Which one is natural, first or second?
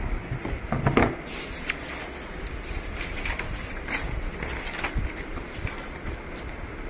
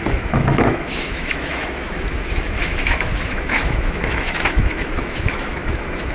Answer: first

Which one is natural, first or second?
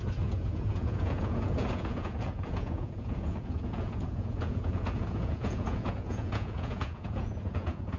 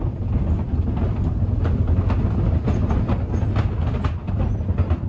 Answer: second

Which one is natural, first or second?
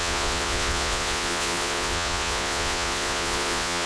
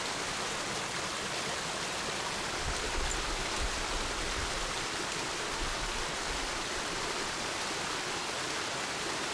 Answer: second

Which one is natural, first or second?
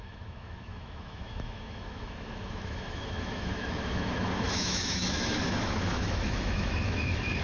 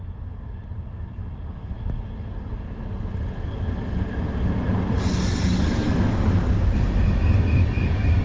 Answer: second